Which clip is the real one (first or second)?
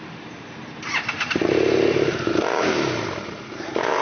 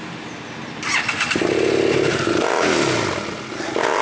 second